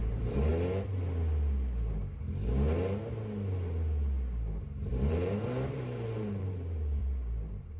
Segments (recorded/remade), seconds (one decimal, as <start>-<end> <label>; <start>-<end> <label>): 0.0-0.5 remade; 0.5-4.9 recorded; 4.9-7.8 remade